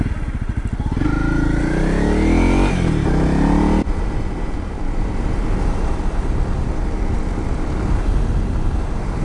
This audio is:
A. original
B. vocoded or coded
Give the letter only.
A